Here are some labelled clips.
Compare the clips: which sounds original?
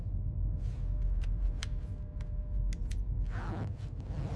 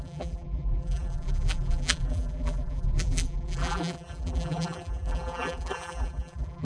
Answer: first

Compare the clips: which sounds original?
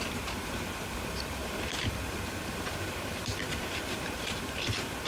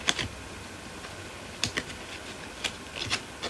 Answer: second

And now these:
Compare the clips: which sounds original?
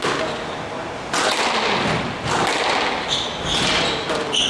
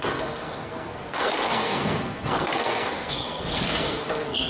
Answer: first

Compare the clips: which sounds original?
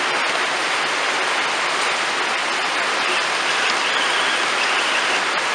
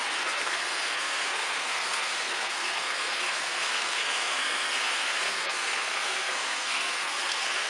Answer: first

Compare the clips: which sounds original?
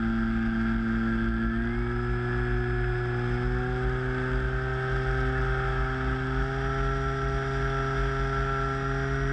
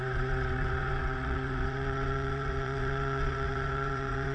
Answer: first